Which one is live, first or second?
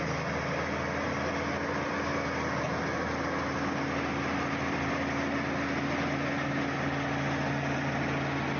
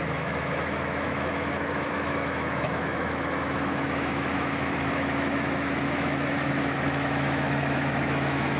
first